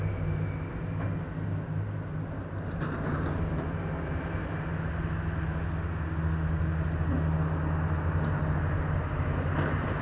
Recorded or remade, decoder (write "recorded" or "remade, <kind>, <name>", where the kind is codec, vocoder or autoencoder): recorded